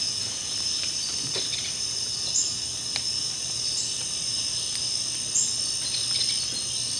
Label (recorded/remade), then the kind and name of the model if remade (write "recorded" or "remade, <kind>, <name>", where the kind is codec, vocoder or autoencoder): recorded